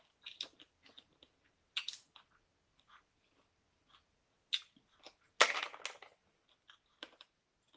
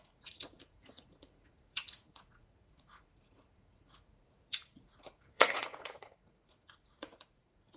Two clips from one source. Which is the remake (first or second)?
second